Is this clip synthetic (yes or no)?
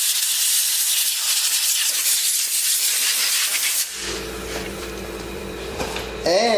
yes